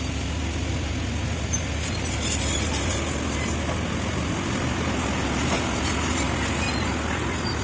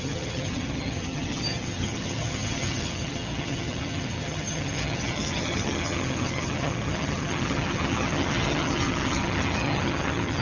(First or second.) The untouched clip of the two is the first